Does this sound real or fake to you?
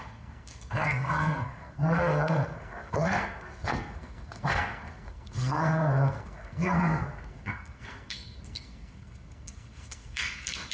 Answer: fake